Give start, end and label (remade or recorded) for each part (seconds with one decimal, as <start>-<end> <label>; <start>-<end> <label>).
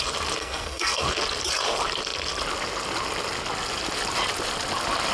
0.0-0.4 recorded; 0.4-1.0 remade; 1.0-5.1 recorded